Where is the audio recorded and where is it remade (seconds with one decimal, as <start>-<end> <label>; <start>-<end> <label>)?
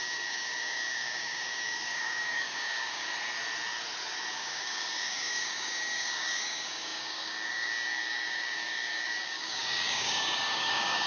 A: 0.0-3.1 remade; 3.1-4.3 recorded; 4.3-11.1 remade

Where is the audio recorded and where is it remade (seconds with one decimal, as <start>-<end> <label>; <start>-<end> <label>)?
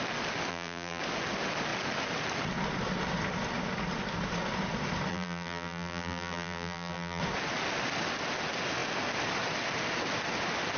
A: 0.0-0.5 recorded; 0.5-1.0 remade; 1.0-5.1 recorded; 5.1-7.2 remade; 7.2-10.8 recorded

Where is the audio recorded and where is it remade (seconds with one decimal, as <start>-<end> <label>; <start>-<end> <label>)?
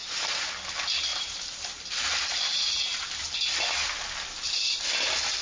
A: 0.0-1.1 recorded; 1.1-2.8 remade; 2.8-5.4 recorded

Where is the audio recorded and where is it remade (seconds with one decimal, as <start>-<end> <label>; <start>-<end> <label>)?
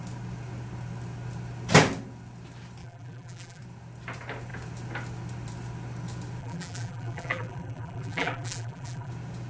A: 0.0-2.8 recorded; 2.8-3.6 remade; 3.6-6.4 recorded; 6.4-9.1 remade; 9.1-9.5 recorded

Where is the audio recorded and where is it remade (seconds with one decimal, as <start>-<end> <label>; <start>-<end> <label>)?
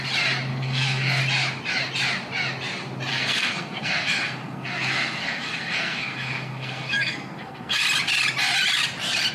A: 0.0-0.5 recorded; 0.5-1.2 remade; 1.2-3.1 recorded; 3.1-7.8 remade; 7.8-9.3 recorded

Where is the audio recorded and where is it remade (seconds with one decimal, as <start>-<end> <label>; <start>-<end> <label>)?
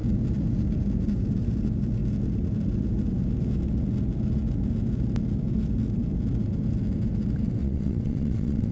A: 0.0-7.6 recorded; 7.6-8.7 remade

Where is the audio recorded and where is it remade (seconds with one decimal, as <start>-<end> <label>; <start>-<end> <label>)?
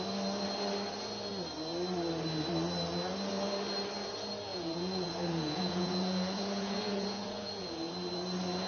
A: 0.0-4.5 recorded; 4.5-7.9 remade; 7.9-8.7 recorded